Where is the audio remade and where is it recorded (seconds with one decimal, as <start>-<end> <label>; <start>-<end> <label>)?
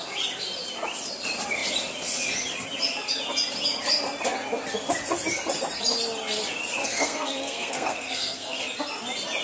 0.0-6.8 recorded; 6.8-8.6 remade; 8.6-9.4 recorded